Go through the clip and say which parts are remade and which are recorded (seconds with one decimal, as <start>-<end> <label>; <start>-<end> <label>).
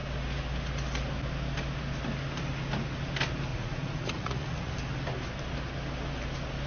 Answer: 0.0-3.5 recorded; 3.5-4.7 remade; 4.7-6.7 recorded